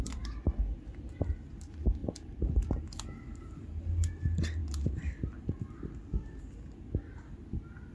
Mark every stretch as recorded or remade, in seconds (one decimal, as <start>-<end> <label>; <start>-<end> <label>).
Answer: 0.0-7.9 recorded